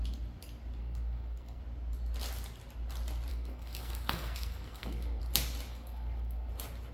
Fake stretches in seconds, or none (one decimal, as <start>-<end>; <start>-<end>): 0.8-1.6; 3.3-5.2; 5.7-6.5